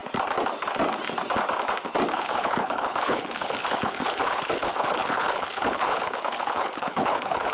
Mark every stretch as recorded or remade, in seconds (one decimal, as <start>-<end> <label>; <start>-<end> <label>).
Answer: 0.0-2.1 recorded; 2.1-7.5 remade